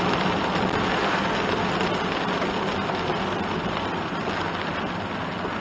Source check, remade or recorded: recorded